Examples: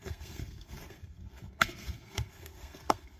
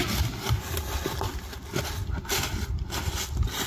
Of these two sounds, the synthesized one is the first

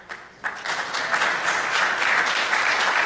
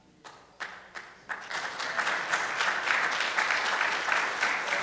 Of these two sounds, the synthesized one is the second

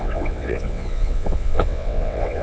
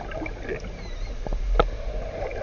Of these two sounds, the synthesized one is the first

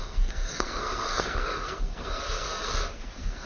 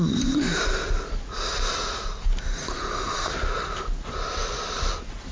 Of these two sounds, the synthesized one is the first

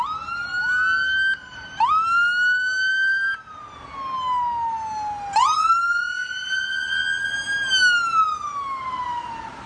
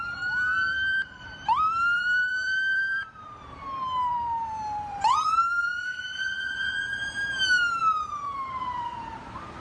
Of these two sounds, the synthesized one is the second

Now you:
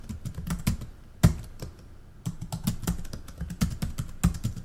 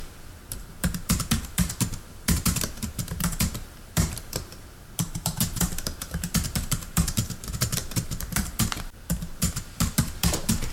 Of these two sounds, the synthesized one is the second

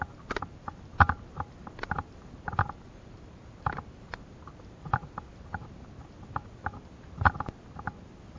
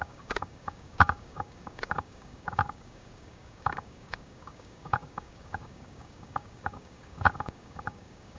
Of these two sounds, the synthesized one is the second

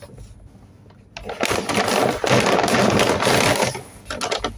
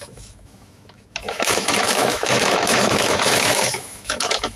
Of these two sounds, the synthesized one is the second